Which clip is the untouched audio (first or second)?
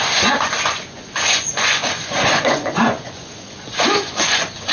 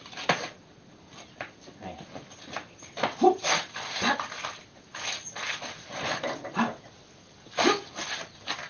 second